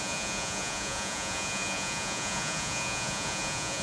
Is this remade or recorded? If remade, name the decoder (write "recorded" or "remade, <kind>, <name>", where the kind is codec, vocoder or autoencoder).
remade, vocoder, Vocos